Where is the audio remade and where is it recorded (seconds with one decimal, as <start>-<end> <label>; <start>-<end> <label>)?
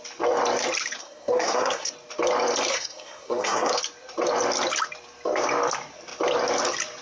0.0-1.0 recorded; 1.0-1.9 remade; 1.9-2.7 recorded; 2.7-3.8 remade; 3.8-7.0 recorded